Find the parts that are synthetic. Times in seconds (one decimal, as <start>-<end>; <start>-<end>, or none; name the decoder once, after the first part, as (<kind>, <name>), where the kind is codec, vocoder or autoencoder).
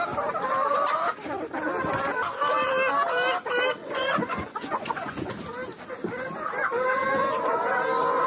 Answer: 3.8-5.3 (vocoder, Vocos)